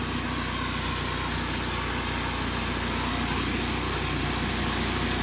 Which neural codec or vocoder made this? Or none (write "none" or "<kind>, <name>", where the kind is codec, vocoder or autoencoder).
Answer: none